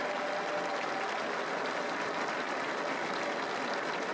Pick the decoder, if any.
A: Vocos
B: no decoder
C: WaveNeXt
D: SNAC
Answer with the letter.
B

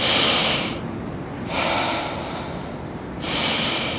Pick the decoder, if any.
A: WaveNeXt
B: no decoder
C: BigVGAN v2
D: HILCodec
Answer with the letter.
B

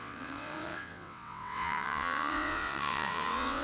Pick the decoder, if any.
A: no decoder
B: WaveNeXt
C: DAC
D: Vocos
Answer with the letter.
B